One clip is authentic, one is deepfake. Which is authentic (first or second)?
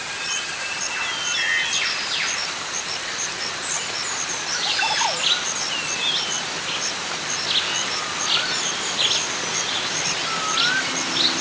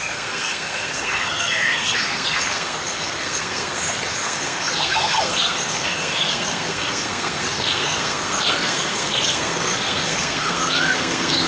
first